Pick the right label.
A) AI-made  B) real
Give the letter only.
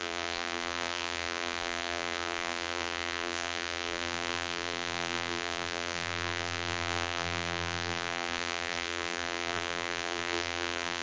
A